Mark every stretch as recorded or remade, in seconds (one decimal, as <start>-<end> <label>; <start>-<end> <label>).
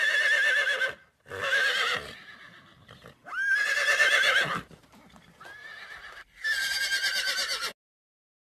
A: 0.0-1.6 recorded; 1.6-6.7 remade; 6.7-8.5 recorded